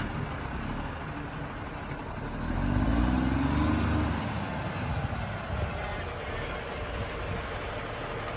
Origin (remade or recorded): recorded